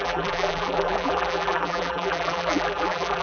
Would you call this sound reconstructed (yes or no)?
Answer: yes